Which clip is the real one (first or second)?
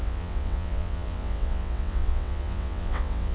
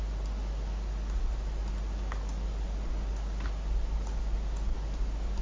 second